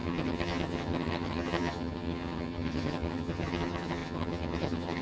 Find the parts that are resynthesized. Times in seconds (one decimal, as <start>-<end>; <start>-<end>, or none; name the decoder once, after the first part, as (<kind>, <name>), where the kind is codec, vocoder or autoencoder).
0.0-5.0 (vocoder, HiFi-GAN)